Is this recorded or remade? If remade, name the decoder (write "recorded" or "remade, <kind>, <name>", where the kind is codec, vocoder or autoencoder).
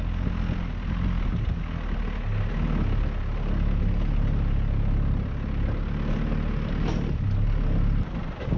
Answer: recorded